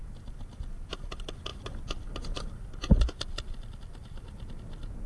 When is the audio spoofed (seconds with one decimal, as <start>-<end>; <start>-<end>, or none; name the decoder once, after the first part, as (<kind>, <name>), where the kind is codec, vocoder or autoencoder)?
none